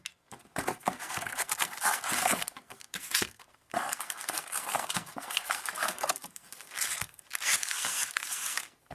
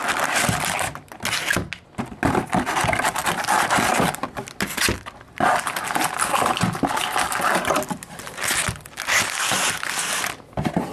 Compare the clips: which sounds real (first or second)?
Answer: second